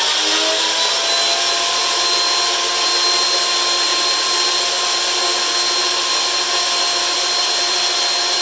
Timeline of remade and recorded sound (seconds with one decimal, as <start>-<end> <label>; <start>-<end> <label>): 0.0-8.4 recorded